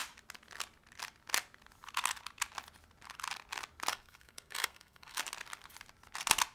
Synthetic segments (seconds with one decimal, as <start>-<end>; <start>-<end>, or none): 3.9-5.2